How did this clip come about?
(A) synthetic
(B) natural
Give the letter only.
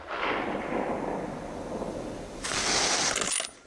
B